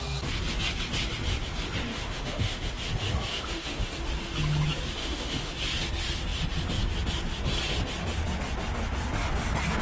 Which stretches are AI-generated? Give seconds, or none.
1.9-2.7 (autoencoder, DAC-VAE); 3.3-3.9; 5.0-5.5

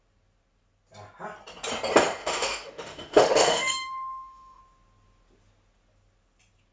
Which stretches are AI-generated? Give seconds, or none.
2.2-4.6 (autoencoder, DAC-VAE)

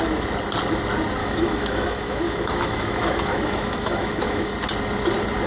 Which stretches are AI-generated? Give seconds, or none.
1.2-4.5 (autoencoder, DAC-VAE)

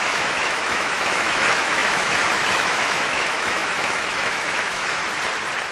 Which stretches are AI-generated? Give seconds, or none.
0.0-5.0 (autoencoder, DAC-VAE)

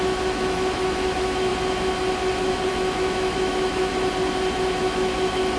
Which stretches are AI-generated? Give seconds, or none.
0.0-1.5 (autoencoder, DAC-VAE); 2.7-3.9; 4.8-5.6

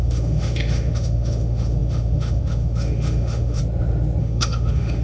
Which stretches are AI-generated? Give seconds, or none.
0.0-3.6 (autoencoder, DAC-VAE); 4.2-5.0